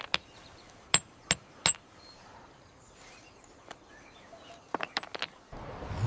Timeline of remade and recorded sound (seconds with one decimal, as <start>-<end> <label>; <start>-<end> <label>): 0.0-1.7 recorded; 1.7-3.9 remade; 3.9-6.1 recorded

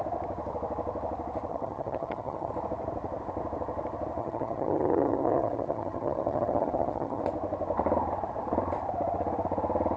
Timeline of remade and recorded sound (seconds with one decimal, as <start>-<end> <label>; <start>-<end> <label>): 0.0-1.5 recorded; 1.5-2.5 remade; 2.5-4.2 recorded; 4.2-7.2 remade; 7.2-10.0 recorded

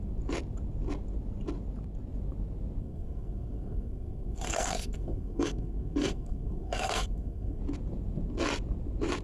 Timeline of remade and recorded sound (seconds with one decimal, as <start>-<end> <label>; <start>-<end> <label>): 0.0-2.8 recorded; 2.8-7.6 remade; 7.6-9.2 recorded

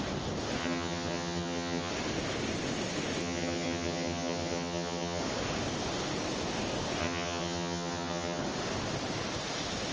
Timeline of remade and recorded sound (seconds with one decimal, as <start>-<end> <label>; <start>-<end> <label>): 0.0-0.6 recorded; 0.6-1.9 remade; 1.9-3.2 recorded; 3.2-5.2 remade; 5.2-7.0 recorded; 7.0-8.4 remade; 8.4-9.9 recorded

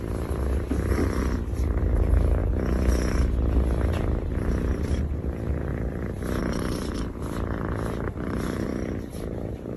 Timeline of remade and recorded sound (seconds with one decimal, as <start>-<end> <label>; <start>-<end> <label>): 0.0-1.0 remade; 1.0-1.8 recorded; 1.8-2.4 remade; 2.4-3.9 recorded; 3.9-5.7 remade; 5.7-6.4 recorded; 6.4-8.7 remade; 8.7-9.2 recorded; 9.2-9.8 remade